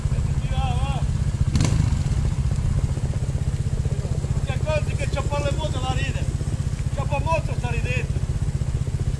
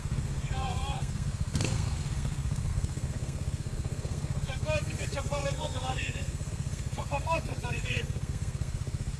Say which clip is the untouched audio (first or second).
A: first